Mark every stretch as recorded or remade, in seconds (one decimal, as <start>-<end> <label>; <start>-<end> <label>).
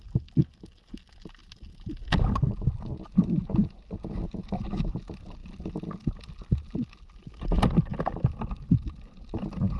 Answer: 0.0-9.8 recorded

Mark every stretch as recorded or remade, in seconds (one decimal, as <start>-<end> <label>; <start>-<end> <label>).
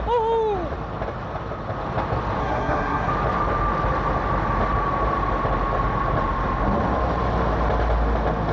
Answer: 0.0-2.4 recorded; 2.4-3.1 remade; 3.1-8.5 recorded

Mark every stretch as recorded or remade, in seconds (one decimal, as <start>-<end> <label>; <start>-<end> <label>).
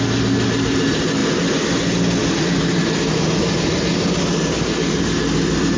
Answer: 0.0-5.8 recorded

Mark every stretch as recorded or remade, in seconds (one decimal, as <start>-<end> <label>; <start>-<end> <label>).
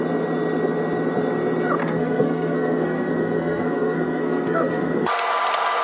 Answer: 0.0-1.8 recorded; 1.8-5.1 remade; 5.1-5.8 recorded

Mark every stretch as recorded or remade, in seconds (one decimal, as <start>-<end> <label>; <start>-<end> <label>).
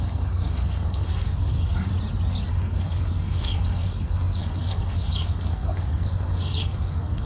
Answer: 0.0-1.9 remade; 1.9-2.5 recorded; 2.5-7.3 remade